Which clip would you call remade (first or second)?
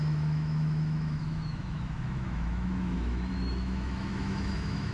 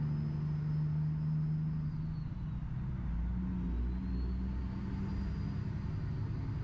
first